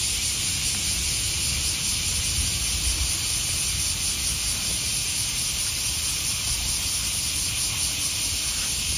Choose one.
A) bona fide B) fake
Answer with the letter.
A